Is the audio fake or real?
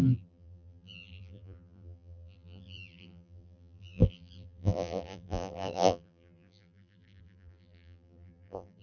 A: fake